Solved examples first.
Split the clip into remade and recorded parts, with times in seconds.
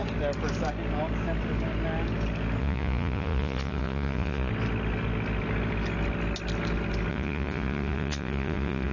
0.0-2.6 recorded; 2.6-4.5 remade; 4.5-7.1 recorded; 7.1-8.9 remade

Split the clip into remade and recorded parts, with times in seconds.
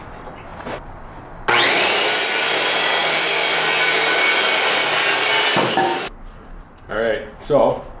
0.0-8.0 recorded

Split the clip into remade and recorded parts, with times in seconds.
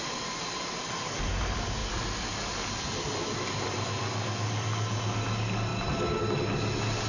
0.0-7.1 recorded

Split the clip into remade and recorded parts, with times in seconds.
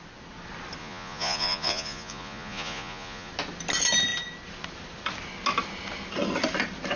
0.0-0.8 recorded; 0.8-3.3 remade; 3.3-7.0 recorded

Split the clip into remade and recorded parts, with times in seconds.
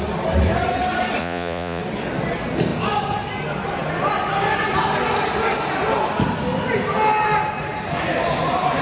0.0-1.2 recorded; 1.2-1.8 remade; 1.8-8.8 recorded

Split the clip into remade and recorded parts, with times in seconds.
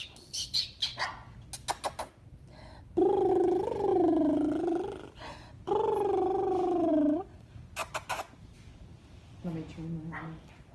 0.0-10.7 recorded